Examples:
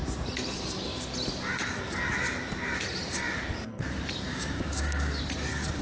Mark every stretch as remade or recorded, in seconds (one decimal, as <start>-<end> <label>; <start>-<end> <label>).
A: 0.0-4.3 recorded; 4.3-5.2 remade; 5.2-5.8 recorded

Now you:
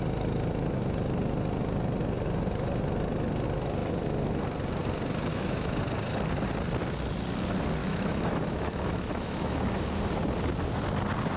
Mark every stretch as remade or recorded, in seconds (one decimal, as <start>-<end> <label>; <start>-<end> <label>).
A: 0.0-5.3 recorded; 5.3-5.8 remade; 5.8-7.8 recorded; 7.8-9.7 remade; 9.7-11.4 recorded

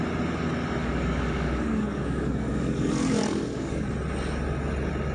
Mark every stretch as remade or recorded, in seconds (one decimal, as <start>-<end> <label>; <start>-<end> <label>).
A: 0.0-0.8 recorded; 0.8-3.9 remade; 3.9-5.1 recorded

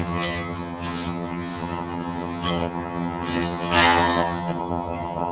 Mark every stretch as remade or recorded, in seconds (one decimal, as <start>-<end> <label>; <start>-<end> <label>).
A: 0.0-5.3 remade

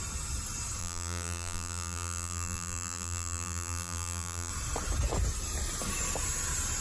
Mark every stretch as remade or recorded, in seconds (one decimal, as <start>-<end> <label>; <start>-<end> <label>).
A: 0.0-0.8 recorded; 0.8-4.5 remade; 4.5-6.8 recorded